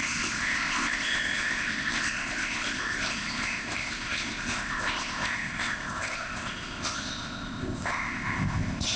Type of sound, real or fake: fake